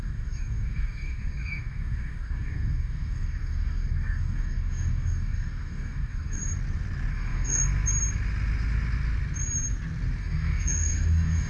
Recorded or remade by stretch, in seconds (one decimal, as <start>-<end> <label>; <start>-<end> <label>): 0.0-6.4 remade; 6.4-7.1 recorded; 7.1-7.6 remade; 7.6-10.2 recorded; 10.2-11.5 remade